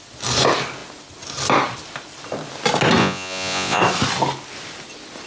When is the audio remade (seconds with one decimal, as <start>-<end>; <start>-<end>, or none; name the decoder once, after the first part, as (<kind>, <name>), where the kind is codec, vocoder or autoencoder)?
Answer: 3.0-3.8 (vocoder, Vocos)